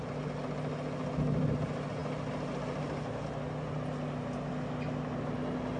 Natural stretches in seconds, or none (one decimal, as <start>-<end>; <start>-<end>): 0.0-5.8